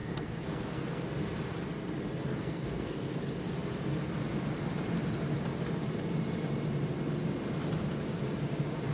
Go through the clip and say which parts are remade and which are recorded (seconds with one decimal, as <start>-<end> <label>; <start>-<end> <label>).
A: 0.0-1.0 remade; 1.0-2.3 recorded; 2.3-3.2 remade; 3.2-8.9 recorded